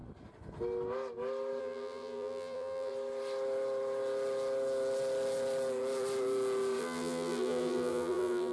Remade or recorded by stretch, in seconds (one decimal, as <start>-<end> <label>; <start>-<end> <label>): 0.0-1.6 recorded; 1.6-2.9 remade; 2.9-6.8 recorded; 6.8-8.5 remade